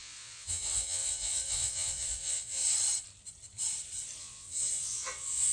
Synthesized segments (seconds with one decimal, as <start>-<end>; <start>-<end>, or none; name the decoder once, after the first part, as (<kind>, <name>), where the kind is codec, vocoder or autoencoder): 0.0-2.6 (vocoder, Vocos); 4.2-5.5